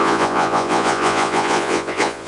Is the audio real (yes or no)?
no